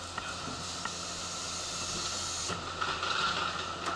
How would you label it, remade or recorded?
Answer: recorded